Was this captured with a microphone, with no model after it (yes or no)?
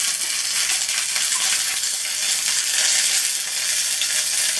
yes